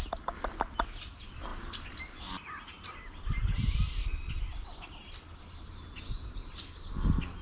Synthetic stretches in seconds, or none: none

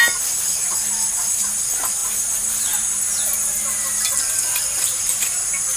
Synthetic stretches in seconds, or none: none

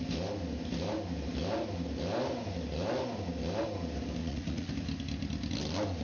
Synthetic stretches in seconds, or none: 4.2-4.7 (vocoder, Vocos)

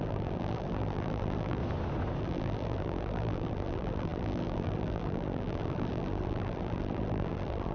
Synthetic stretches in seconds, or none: 0.0-1.6 (vocoder, BigVGAN v2); 2.2-7.7

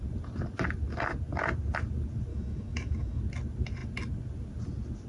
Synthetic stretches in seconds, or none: 2.3-3.2 (autoencoder, DAC-VAE)

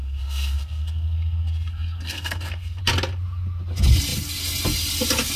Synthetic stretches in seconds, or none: 0.0-2.8 (codec, SNAC)

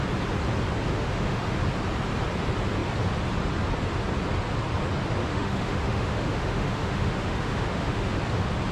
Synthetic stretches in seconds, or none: 0.9-1.5 (autoencoder, DAC-VAE); 5.2-8.2